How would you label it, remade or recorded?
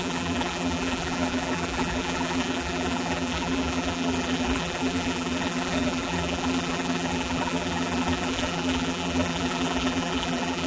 remade